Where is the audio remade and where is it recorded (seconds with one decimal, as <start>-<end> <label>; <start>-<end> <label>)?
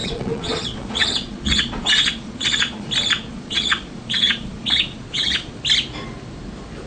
0.0-2.9 remade; 2.9-3.3 recorded; 3.3-5.6 remade; 5.6-6.9 recorded